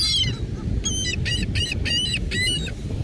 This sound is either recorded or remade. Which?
recorded